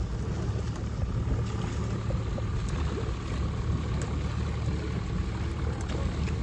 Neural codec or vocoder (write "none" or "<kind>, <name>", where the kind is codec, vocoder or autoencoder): none